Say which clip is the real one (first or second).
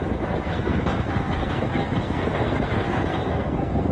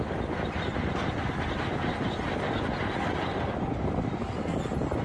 second